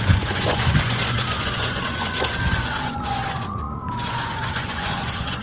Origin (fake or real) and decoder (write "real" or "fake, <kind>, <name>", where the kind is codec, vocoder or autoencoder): fake, vocoder, Vocos